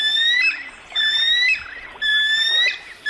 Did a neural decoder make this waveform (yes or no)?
no